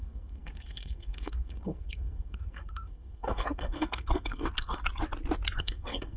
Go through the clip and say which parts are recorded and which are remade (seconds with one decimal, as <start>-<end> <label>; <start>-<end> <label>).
0.0-4.8 remade; 4.8-5.6 recorded; 5.6-6.2 remade